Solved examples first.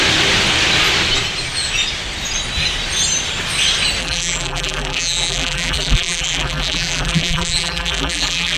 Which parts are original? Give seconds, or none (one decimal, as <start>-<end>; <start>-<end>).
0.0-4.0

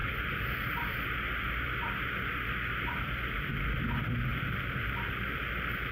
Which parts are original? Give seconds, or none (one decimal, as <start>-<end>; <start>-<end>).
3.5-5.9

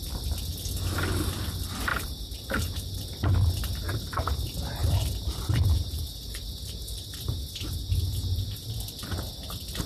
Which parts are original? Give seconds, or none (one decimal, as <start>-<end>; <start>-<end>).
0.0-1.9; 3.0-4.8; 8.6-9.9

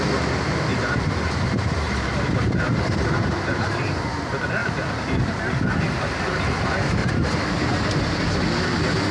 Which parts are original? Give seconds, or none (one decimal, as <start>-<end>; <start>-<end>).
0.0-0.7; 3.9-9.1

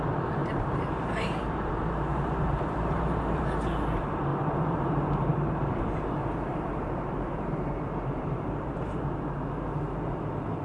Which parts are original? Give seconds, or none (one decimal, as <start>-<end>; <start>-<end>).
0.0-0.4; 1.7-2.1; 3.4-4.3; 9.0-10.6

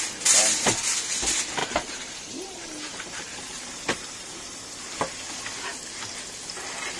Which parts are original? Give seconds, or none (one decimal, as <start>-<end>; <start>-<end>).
0.0-1.6; 4.6-7.0

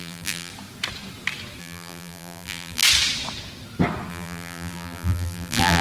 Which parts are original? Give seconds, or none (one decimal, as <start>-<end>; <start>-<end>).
0.5-1.6; 2.8-4.1

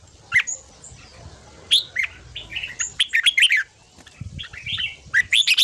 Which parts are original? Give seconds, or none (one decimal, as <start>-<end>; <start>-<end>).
0.0-5.6